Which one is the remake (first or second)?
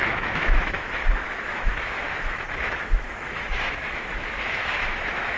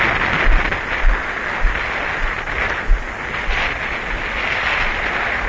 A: first